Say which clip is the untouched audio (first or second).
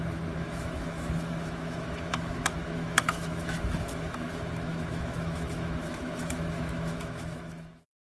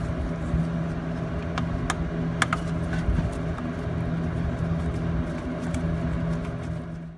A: second